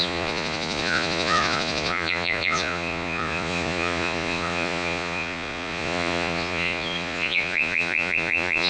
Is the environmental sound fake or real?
fake